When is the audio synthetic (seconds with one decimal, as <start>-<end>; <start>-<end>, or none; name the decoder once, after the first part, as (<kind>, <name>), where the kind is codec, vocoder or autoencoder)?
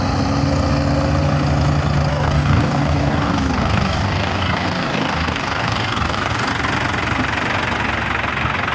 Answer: 2.1-6.5 (codec, DAC)